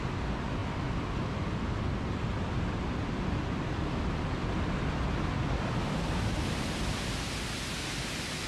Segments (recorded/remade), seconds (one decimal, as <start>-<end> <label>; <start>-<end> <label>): 0.0-5.8 recorded; 5.8-7.0 remade; 7.0-8.5 recorded